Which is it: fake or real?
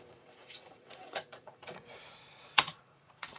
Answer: fake